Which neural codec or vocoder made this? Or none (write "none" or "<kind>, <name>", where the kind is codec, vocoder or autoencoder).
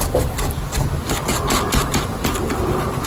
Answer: none